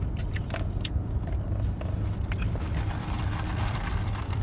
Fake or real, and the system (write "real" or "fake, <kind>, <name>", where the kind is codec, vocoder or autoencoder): fake, vocoder, BigVGAN v2